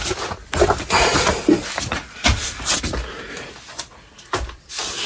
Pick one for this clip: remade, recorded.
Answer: recorded